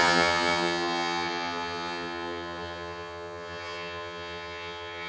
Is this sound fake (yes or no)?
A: yes